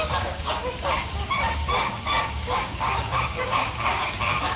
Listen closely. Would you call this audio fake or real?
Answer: fake